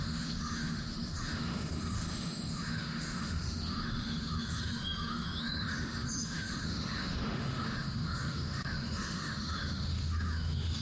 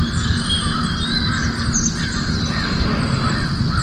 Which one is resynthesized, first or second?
first